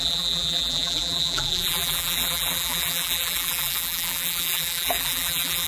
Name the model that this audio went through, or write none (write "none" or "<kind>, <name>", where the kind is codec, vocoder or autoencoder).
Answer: vocoder, BigVGAN v2